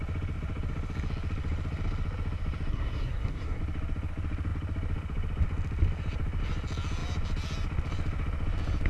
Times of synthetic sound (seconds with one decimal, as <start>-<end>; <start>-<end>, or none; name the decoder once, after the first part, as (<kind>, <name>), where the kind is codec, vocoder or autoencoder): 2.7-3.6 (codec, SNAC)